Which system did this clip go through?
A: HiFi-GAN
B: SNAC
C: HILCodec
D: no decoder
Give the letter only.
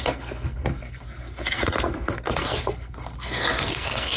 B